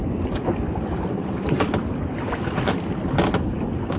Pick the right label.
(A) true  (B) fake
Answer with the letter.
A